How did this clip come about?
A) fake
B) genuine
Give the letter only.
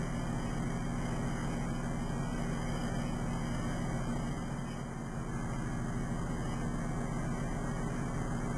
B